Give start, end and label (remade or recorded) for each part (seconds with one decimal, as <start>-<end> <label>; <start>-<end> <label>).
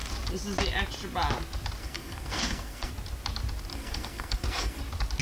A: 0.0-1.8 recorded; 1.8-2.9 remade; 2.9-3.7 recorded; 3.7-4.8 remade; 4.8-5.2 recorded